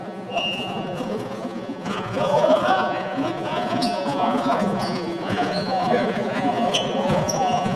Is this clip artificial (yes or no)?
yes